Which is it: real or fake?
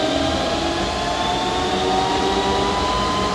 real